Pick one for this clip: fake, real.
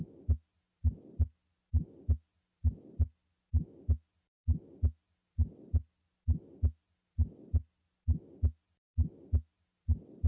real